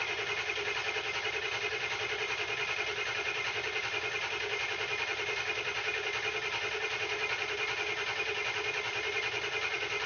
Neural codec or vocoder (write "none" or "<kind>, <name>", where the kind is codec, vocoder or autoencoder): none